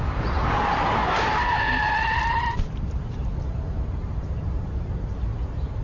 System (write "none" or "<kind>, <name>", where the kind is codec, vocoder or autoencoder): vocoder, BigVGAN v2